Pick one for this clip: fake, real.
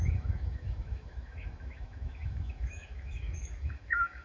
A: fake